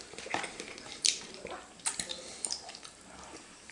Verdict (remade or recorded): remade